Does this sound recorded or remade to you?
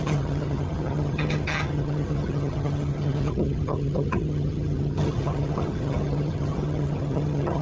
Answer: remade